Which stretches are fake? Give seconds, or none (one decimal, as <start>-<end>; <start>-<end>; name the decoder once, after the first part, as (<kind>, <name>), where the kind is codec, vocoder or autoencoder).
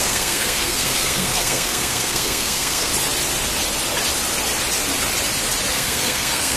0.0-2.9 (codec, SNAC); 5.7-6.6